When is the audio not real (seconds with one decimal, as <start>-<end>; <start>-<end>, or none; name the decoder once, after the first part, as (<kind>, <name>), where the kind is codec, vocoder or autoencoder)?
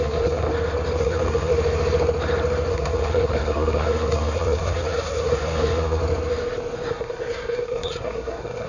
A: 0.0-0.5 (codec, SNAC); 1.0-1.5; 2.7-6.0; 6.9-8.7